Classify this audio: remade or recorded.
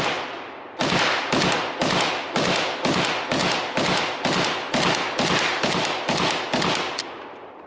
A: recorded